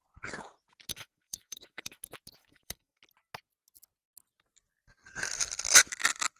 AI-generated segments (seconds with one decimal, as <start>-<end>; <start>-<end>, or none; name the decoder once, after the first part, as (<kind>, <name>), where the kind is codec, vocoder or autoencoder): 0.9-2.0 (codec, SNAC); 2.4-3.0